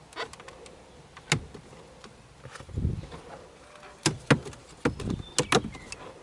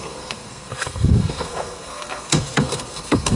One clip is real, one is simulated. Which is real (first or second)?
first